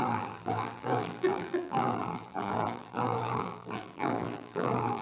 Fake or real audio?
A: fake